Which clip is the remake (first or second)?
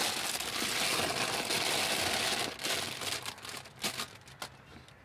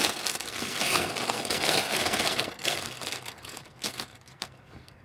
second